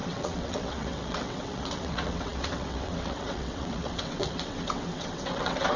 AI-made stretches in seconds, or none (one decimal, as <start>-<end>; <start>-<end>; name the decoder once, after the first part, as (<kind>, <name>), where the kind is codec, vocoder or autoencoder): 0.0-5.8 (vocoder, WaveNeXt)